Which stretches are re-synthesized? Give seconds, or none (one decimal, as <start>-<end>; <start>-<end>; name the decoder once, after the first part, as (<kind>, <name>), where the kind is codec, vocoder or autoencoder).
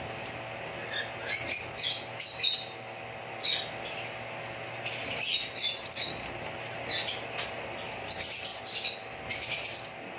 none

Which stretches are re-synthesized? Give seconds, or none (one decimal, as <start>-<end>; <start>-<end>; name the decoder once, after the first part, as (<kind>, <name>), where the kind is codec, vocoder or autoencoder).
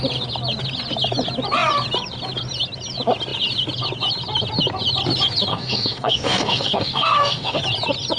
5.5-7.6 (codec, DAC)